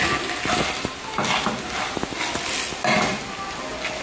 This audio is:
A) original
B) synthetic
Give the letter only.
A